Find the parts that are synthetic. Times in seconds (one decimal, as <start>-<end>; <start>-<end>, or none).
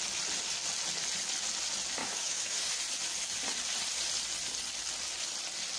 2.0-2.6